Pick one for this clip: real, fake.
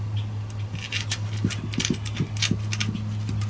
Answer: real